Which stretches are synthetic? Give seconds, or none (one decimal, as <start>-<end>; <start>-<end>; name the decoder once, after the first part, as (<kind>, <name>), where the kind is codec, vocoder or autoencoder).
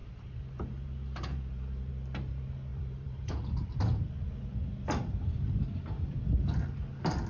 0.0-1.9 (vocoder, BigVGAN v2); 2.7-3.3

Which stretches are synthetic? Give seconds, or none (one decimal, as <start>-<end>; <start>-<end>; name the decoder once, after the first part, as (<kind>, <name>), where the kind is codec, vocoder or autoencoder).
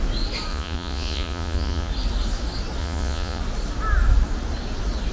0.5-1.9 (vocoder, Vocos); 2.8-3.4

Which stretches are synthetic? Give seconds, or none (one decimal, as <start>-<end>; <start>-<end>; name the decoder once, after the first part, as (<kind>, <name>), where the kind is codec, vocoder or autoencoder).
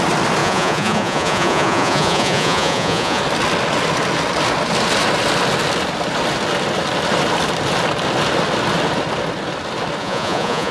0.4-3.2 (vocoder, Vocos); 10.0-10.7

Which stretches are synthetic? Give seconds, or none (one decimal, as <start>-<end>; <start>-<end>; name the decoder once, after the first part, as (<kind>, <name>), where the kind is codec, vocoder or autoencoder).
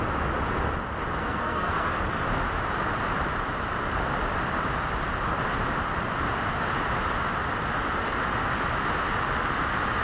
1.2-2.0 (codec, SNAC)